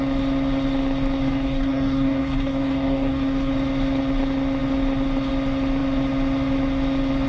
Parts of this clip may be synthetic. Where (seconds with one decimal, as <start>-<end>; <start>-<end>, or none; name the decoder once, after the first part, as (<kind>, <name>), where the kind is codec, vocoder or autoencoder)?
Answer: 1.2-3.5 (codec, DAC)